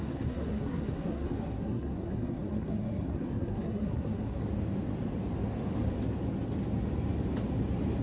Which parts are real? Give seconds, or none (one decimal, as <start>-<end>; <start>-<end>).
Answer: 4.4-8.0